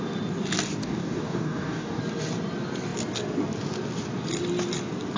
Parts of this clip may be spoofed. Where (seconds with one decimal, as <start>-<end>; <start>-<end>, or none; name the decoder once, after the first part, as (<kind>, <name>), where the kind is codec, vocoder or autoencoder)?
0.8-2.0 (codec, DAC)